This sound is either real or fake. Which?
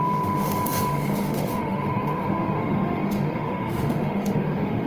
fake